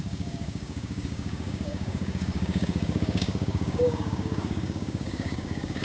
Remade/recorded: remade